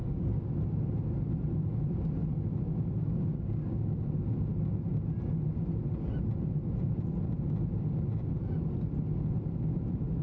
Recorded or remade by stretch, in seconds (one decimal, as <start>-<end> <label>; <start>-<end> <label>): 0.0-0.5 remade; 0.5-3.0 recorded; 3.0-4.1 remade; 4.1-10.2 recorded